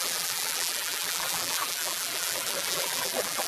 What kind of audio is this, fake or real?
fake